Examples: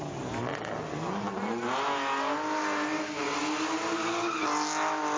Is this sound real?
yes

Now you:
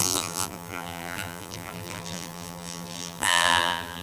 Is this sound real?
no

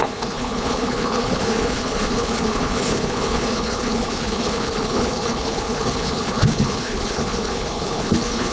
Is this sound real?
no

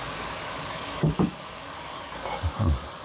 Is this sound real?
no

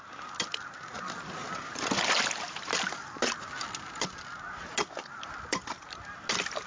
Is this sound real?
yes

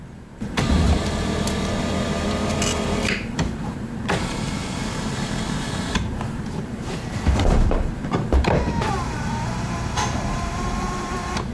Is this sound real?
no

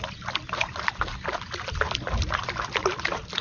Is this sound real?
yes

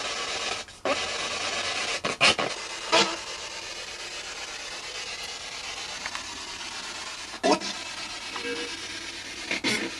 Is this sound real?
yes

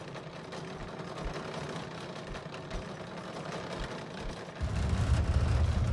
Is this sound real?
yes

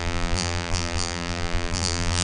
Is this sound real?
no